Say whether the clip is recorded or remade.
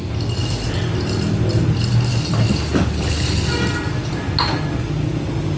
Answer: recorded